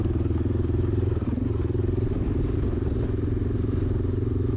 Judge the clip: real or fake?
real